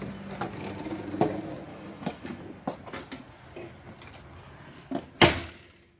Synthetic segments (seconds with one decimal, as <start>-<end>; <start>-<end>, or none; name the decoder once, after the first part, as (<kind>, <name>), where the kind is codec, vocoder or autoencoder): 1.7-2.4 (autoencoder, DAC-VAE)